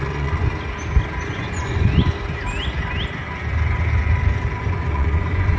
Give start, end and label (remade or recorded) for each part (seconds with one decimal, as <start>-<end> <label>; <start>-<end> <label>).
0.0-0.5 remade; 0.5-1.3 recorded; 1.3-2.1 remade; 2.1-4.6 recorded; 4.6-5.6 remade